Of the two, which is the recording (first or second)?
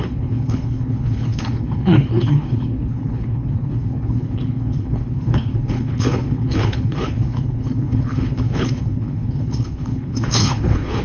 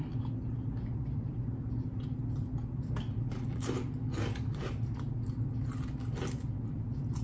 second